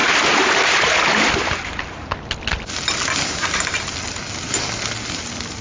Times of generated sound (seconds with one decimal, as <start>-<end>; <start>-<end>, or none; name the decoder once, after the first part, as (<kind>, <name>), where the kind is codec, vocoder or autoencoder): none